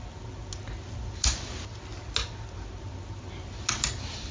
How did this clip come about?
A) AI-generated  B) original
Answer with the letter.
B